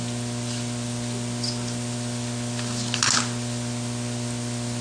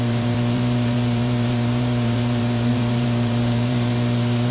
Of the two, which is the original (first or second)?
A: first